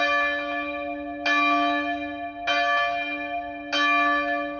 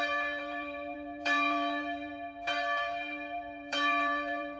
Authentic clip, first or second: first